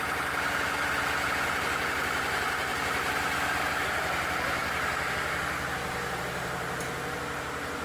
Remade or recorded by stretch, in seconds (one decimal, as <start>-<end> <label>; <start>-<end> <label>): 0.0-7.8 recorded